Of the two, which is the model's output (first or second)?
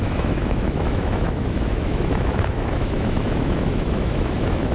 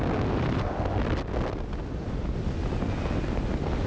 first